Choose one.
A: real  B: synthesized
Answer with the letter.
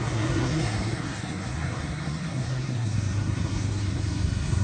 B